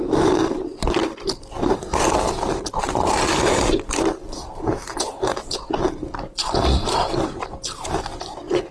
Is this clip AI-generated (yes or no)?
no